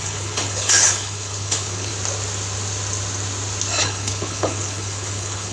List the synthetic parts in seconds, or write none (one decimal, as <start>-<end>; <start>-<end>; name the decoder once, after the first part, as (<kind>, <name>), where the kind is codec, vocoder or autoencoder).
0.0-1.9 (codec, HILCodec); 3.8-5.5